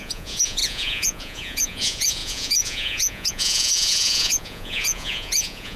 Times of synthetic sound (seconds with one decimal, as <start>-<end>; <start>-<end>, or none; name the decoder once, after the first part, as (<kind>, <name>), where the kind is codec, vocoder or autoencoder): 0.0-5.8 (vocoder, Vocos)